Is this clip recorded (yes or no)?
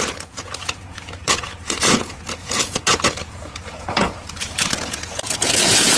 no